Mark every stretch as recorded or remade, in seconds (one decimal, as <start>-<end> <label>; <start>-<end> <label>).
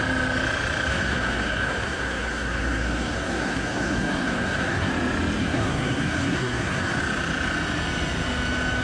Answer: 0.0-0.9 recorded; 0.9-4.9 remade; 4.9-5.4 recorded; 5.4-7.0 remade; 7.0-8.8 recorded